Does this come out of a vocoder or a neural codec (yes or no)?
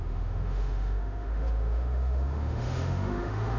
yes